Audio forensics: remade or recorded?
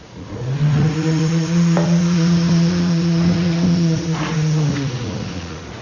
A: remade